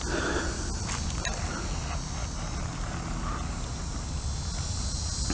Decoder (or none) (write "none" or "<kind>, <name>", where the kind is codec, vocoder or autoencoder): none